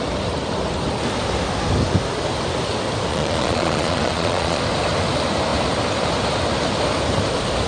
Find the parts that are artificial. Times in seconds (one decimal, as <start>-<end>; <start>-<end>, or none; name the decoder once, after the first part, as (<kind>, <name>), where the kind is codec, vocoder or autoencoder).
3.1-4.6 (vocoder, Vocos)